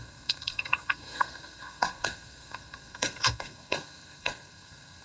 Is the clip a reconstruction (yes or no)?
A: yes